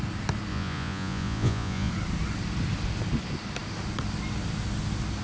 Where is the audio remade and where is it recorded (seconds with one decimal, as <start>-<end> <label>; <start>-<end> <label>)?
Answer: 0.0-0.5 recorded; 0.5-1.9 remade; 1.9-5.2 recorded